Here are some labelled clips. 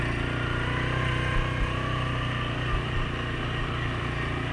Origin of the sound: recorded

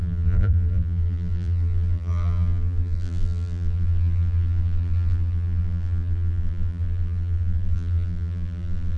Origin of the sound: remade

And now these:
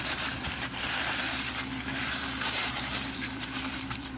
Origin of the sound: remade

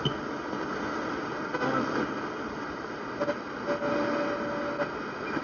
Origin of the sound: recorded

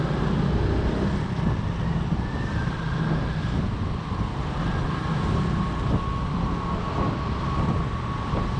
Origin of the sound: recorded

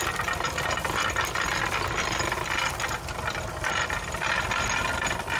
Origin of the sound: recorded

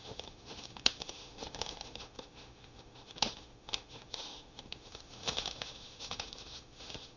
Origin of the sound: remade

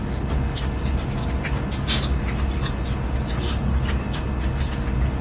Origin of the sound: recorded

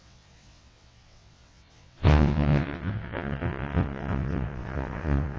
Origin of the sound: remade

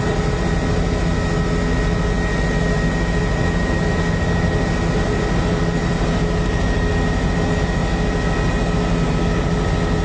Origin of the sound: recorded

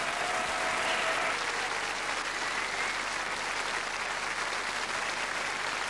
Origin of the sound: recorded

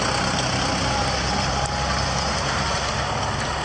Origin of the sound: recorded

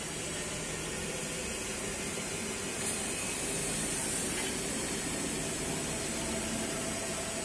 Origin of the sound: recorded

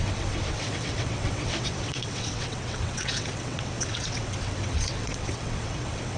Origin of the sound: remade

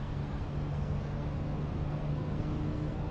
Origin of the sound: remade